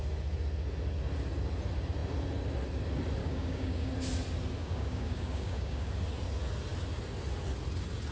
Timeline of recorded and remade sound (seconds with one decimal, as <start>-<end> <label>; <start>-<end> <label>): 0.0-3.2 recorded; 3.2-3.9 remade; 3.9-4.6 recorded; 4.6-5.9 remade; 5.9-8.1 recorded